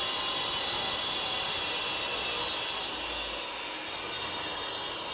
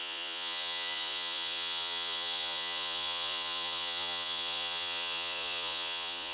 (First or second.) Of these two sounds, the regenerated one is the second